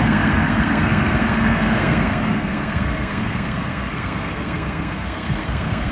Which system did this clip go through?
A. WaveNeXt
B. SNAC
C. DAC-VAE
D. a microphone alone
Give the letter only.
B